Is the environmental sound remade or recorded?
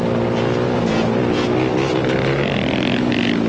recorded